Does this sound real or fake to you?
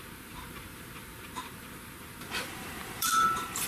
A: fake